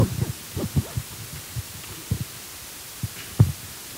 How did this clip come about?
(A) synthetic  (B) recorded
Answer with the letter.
B